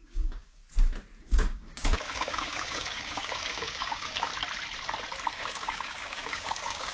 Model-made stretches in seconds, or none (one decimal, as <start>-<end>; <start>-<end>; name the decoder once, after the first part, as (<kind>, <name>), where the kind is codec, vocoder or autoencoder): 0.0-0.6 (codec, DAC); 1.2-4.3; 5.3-6.9

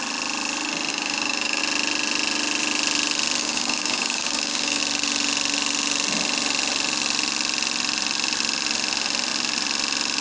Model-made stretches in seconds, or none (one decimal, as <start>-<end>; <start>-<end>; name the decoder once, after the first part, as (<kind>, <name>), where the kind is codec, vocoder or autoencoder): 0.9-1.6 (codec, DAC); 3.4-4.8

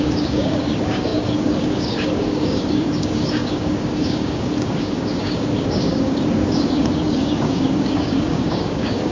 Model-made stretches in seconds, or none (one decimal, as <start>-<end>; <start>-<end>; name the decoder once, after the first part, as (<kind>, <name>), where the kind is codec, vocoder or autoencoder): 0.0-9.1 (codec, DAC)

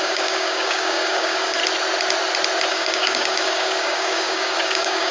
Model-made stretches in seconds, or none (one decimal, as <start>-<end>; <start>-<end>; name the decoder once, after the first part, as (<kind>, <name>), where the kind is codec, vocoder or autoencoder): 0.0-1.6 (codec, DAC); 2.7-5.1

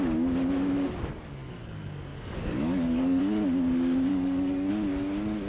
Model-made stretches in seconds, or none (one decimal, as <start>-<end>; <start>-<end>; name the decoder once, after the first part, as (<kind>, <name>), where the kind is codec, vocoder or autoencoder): 2.1-3.2 (codec, DAC); 4.1-4.7

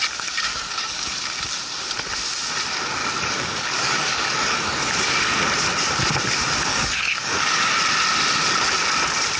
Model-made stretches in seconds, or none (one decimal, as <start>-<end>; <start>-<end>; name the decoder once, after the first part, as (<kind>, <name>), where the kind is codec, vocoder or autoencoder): 0.5-1.1 (codec, DAC); 3.0-4.9; 6.7-7.7